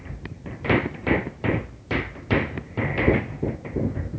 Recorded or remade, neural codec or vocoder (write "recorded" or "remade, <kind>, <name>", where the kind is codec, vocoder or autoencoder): remade, vocoder, BigVGAN v2